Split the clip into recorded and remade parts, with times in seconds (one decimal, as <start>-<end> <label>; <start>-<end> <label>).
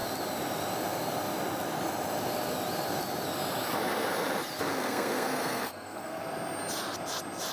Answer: 0.0-4.7 recorded; 4.7-6.2 remade; 6.2-7.5 recorded